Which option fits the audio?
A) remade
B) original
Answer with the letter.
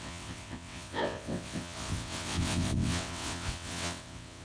A